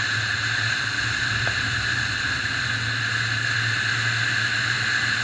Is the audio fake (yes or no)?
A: no